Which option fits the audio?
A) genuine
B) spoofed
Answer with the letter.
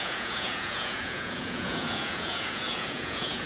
B